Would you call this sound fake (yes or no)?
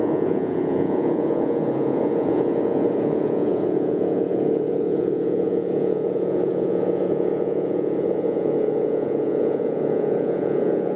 yes